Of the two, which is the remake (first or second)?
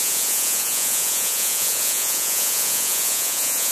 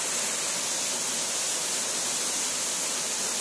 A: first